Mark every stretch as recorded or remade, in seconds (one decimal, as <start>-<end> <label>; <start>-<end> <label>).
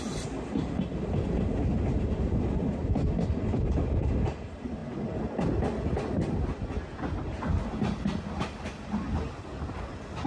0.0-10.3 recorded